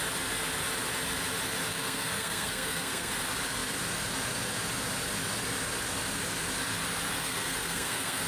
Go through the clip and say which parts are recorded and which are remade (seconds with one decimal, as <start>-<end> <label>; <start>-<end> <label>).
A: 0.0-1.7 recorded; 1.7-3.1 remade; 3.1-7.1 recorded; 7.1-8.3 remade